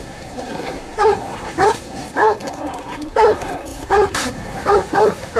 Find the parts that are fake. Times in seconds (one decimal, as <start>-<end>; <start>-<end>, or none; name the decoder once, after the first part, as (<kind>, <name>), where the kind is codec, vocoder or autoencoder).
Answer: 0.0-5.4 (codec, SNAC)

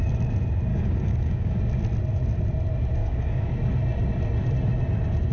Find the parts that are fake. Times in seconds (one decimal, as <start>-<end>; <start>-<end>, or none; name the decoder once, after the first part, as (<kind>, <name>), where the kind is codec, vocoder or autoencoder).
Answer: 0.7-1.6 (codec, DAC); 3.0-3.5

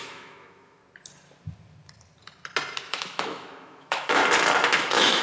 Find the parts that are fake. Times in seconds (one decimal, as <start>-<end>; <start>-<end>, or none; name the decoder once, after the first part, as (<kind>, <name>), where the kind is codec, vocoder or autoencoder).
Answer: 0.0-0.8 (autoencoder, DAC-VAE); 2.8-4.2; 4.8-5.2